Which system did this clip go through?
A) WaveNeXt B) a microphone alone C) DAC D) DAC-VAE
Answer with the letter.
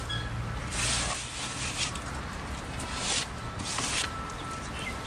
B